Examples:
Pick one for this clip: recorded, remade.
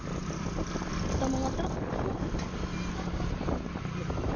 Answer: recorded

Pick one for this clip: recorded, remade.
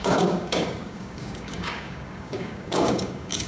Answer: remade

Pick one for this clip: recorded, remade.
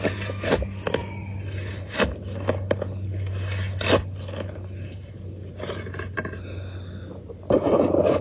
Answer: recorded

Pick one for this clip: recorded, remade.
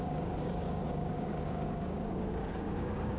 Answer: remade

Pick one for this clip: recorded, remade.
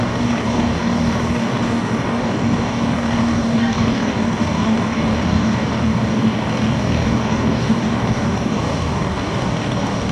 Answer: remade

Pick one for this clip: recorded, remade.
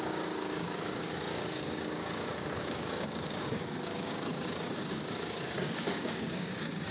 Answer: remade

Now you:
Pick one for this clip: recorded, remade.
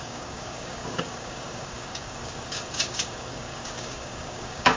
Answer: remade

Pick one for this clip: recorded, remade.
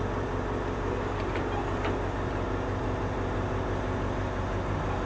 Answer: recorded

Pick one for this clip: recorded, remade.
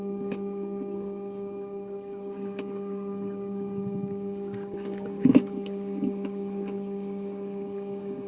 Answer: remade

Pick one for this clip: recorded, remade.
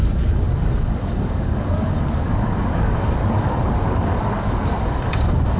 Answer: remade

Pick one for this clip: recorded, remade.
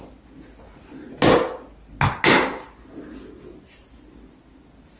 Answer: recorded